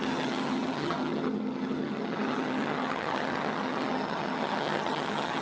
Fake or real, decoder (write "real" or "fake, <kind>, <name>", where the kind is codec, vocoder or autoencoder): fake, vocoder, HiFi-GAN